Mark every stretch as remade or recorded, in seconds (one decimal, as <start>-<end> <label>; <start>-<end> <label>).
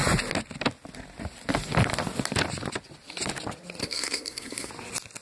0.0-3.8 recorded; 3.8-4.7 remade; 4.7-5.2 recorded